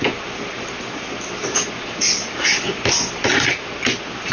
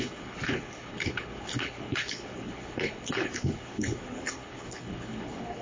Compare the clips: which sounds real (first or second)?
first